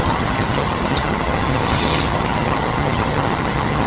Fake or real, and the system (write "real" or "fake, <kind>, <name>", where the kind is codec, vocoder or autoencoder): fake, vocoder, HiFi-GAN